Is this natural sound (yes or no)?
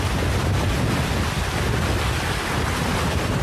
yes